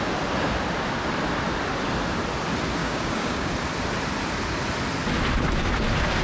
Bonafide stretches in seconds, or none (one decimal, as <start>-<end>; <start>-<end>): 0.0-2.8; 3.5-6.2